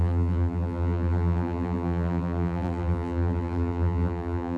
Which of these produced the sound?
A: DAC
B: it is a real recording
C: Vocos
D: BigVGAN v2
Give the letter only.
D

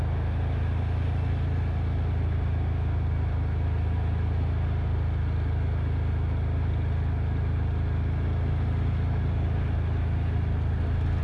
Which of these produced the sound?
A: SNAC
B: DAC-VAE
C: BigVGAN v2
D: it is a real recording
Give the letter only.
D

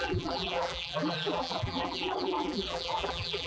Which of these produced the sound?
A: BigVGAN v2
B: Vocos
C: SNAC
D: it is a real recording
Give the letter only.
A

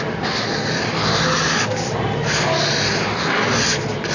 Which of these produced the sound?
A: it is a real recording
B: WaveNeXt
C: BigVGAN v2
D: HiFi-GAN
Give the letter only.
A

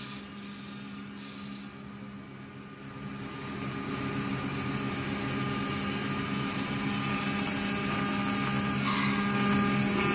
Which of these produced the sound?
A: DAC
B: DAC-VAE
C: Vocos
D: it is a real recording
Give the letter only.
D